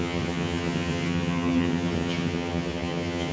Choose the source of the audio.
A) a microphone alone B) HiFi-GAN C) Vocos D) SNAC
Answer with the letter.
B